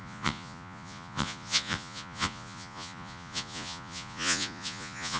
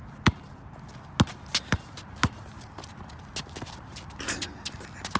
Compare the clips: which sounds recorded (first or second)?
second